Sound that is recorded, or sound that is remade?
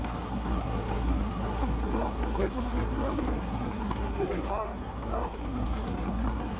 remade